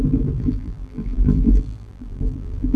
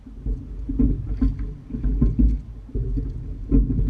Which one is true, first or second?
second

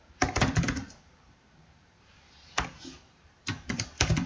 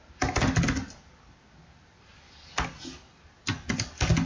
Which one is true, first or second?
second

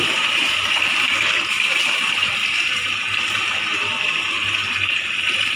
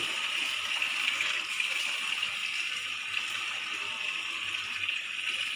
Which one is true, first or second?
second